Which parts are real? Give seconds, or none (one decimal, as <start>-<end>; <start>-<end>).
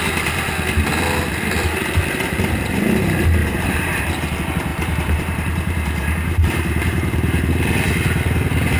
0.0-3.4; 4.1-4.7; 7.5-8.8